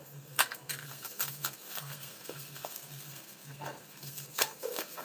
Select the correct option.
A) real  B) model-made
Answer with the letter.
B